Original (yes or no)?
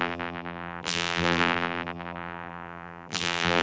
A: no